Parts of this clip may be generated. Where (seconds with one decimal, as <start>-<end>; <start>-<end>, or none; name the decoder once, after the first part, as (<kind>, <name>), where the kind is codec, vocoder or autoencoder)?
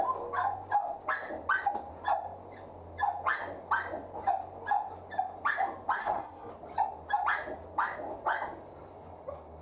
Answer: 6.0-6.5 (codec, SNAC)